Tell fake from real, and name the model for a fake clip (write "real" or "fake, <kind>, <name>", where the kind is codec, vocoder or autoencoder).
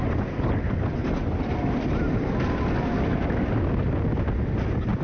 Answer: real